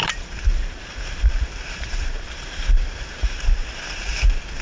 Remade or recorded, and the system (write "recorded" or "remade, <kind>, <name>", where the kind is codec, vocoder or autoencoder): remade, vocoder, BigVGAN v2